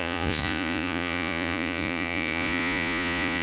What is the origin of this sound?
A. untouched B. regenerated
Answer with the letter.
B